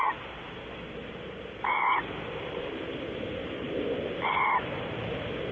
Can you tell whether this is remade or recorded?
recorded